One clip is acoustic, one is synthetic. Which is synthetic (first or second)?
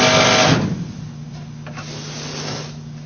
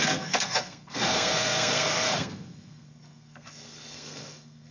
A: second